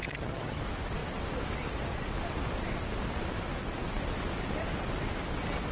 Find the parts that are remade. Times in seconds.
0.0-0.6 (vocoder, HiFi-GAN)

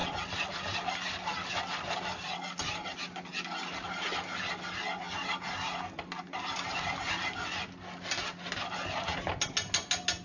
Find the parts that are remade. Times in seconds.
none